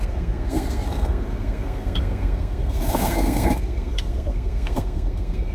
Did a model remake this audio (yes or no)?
yes